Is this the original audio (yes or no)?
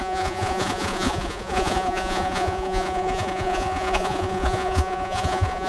no